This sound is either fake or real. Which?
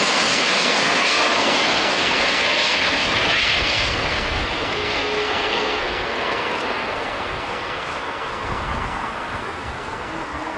fake